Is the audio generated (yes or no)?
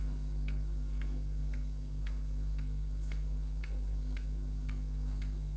yes